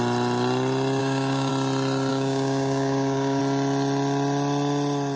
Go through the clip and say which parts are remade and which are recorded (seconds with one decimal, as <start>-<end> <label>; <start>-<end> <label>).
0.0-1.0 recorded; 1.0-1.5 remade; 1.5-2.1 recorded; 2.1-3.4 remade; 3.4-5.2 recorded